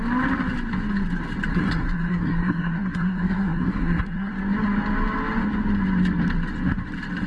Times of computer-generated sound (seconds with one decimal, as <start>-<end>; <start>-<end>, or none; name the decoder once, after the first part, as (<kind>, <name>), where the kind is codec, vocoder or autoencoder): 1.5-4.3 (codec, SNAC)